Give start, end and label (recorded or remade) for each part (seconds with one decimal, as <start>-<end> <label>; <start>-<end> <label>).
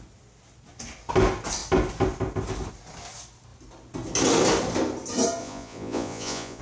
0.0-5.4 recorded; 5.4-6.6 remade